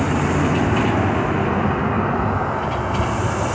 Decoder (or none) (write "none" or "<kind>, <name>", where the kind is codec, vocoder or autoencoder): none